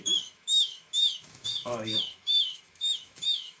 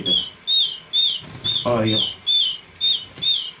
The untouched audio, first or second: second